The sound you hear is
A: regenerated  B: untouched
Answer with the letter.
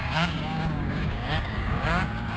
A